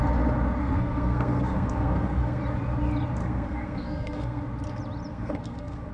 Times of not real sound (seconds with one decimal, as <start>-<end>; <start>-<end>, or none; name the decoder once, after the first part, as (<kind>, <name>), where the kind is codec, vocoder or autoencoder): 0.6-2.4 (codec, SNAC); 3.2-4.4; 5.1-5.9